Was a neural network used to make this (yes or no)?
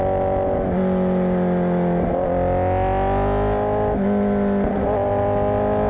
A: no